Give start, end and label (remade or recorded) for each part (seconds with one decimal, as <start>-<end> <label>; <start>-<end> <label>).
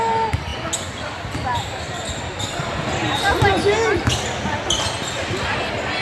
0.0-6.0 recorded